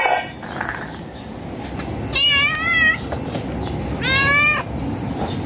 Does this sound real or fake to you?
real